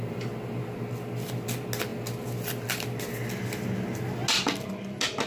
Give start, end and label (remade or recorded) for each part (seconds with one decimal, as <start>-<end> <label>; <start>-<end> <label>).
0.0-5.3 recorded